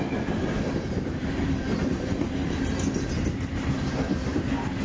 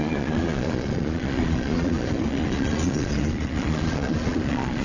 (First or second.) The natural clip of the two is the first